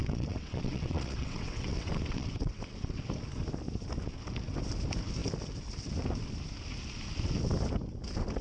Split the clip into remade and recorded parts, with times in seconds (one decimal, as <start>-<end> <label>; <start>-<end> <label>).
0.0-3.0 remade; 3.0-8.4 recorded